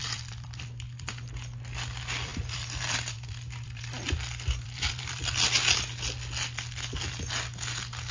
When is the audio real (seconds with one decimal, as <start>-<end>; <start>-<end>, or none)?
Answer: 1.1-2.3; 5.3-8.1

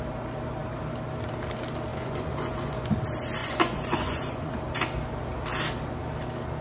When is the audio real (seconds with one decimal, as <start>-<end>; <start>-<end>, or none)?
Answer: 0.0-1.9; 2.9-3.4; 4.5-6.6

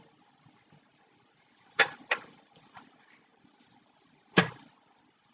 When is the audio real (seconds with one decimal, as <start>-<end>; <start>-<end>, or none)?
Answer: 0.0-0.9; 2.7-3.3; 4.4-5.3

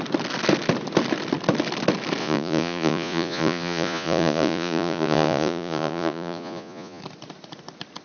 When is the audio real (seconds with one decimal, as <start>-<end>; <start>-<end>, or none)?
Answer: 0.0-2.2; 7.0-8.0

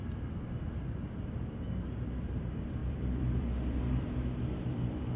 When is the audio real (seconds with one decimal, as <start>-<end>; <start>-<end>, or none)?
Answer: none

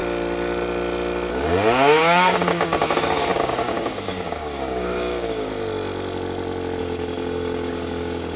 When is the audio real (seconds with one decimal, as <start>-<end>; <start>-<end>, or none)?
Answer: 0.0-1.3; 5.5-6.8